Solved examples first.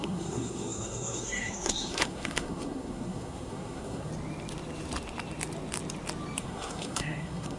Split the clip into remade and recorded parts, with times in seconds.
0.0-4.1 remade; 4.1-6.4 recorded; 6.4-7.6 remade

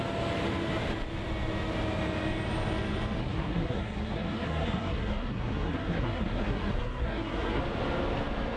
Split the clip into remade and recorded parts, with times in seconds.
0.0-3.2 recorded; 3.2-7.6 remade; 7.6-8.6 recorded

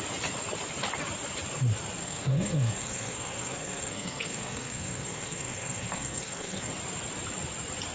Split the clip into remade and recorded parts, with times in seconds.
0.0-2.0 recorded; 2.0-6.7 remade; 6.7-7.9 recorded